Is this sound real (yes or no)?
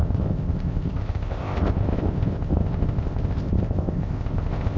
no